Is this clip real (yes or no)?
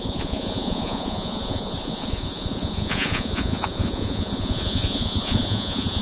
no